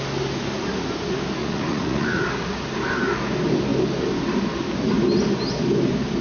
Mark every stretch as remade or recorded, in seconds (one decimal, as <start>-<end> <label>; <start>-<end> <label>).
0.0-1.4 recorded; 1.4-2.2 remade; 2.2-6.2 recorded